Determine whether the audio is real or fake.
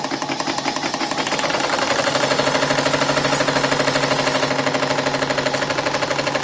real